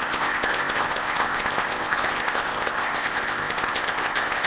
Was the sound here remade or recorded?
remade